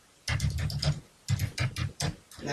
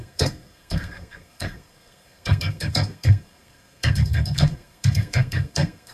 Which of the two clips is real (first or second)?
first